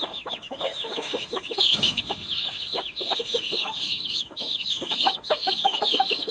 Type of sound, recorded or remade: remade